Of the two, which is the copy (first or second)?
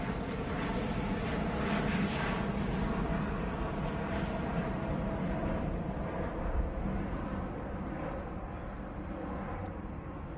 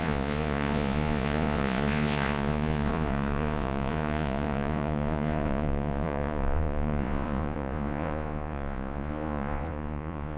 second